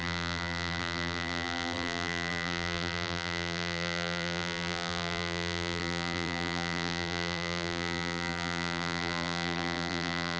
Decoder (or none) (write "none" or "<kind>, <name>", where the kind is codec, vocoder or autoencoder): vocoder, BigVGAN v2